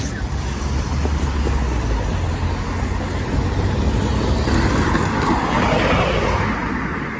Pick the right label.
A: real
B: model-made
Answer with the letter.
A